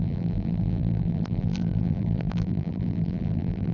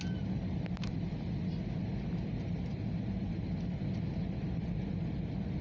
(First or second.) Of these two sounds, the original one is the second